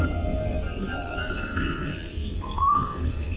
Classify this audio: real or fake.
fake